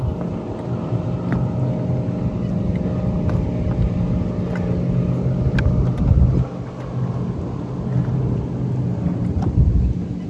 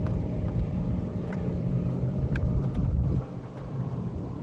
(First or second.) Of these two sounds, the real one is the first